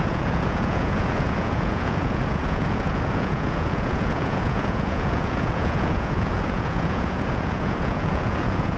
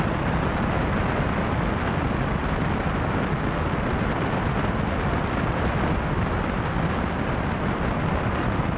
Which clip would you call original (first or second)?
second